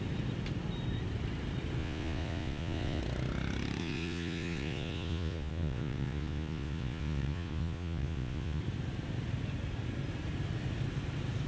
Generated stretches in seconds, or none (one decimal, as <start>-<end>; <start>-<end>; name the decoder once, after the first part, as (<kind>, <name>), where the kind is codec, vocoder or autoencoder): 1.8-3.0 (vocoder, Vocos); 3.8-8.6